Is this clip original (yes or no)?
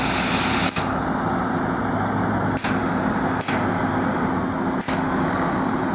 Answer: yes